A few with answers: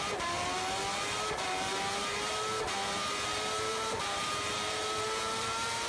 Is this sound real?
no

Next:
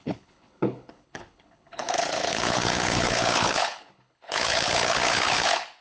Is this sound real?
no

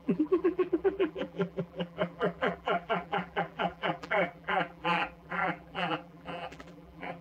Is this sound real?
no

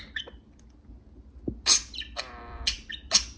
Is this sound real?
yes